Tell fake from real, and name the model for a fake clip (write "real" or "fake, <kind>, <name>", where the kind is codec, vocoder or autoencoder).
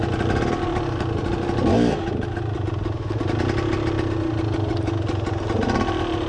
real